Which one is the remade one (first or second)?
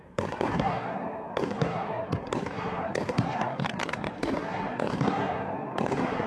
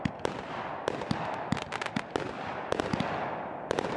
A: first